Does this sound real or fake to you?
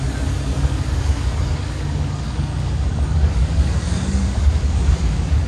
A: fake